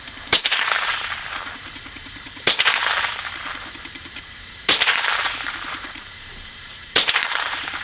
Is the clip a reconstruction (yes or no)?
yes